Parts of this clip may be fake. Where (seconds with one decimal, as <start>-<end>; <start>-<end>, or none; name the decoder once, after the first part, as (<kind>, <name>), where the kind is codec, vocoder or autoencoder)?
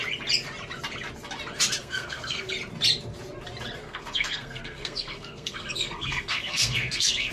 1.8-2.5 (codec, SNAC); 3.8-7.3